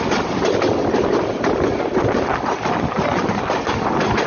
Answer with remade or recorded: recorded